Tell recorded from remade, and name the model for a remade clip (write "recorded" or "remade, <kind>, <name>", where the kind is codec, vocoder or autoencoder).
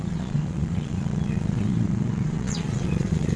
remade, vocoder, Vocos